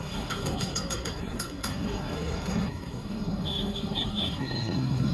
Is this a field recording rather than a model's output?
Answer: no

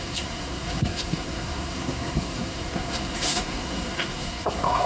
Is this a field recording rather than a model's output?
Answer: no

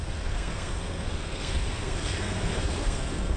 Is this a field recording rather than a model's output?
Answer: no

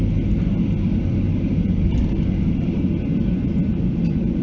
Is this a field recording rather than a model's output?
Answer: yes